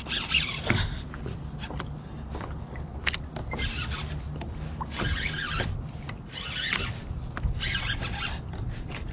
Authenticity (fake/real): real